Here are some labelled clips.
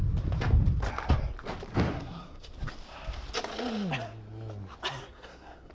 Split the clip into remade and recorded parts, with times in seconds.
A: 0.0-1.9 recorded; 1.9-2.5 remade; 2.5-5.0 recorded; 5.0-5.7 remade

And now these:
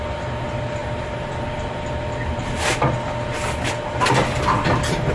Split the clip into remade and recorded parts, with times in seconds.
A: 0.0-5.1 recorded

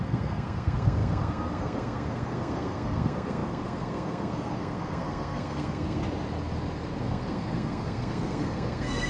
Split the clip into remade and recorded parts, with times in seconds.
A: 0.0-6.0 remade; 6.0-7.0 recorded; 7.0-9.1 remade

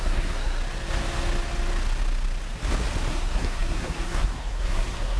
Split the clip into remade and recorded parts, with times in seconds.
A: 0.0-0.6 remade; 0.6-3.1 recorded; 3.1-5.2 remade

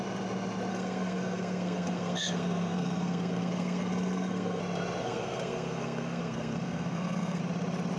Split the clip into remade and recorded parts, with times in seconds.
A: 0.0-0.7 recorded; 0.7-4.6 remade; 4.6-5.0 recorded; 5.0-7.4 remade; 7.4-8.0 recorded

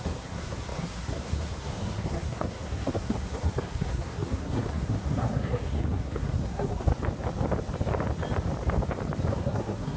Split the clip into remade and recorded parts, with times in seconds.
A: 0.0-6.9 remade; 6.9-9.3 recorded; 9.3-10.0 remade